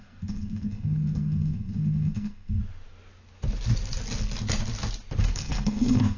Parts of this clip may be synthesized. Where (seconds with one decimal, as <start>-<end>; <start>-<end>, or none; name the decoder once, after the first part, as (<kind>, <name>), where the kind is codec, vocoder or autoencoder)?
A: 0.0-2.6 (codec, SNAC); 5.2-6.2